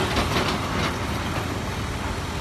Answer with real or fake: real